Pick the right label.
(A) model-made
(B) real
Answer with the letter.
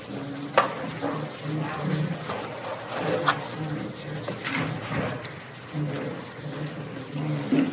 B